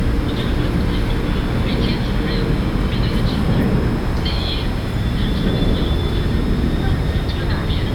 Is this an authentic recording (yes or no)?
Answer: yes